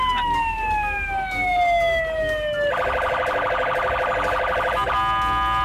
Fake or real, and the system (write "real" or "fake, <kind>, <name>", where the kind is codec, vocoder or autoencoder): real